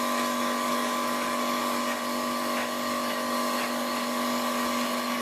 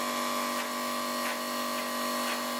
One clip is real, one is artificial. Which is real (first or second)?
second